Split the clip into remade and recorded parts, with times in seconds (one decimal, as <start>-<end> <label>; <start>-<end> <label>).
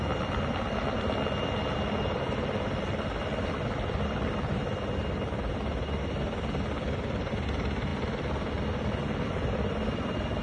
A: 0.0-10.4 recorded